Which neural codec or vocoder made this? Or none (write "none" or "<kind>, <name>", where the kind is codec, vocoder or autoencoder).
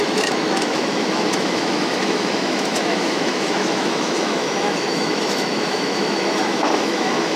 autoencoder, DAC-VAE